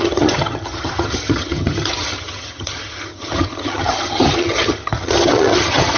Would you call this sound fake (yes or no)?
yes